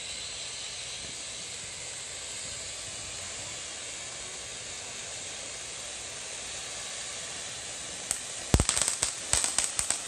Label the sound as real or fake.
real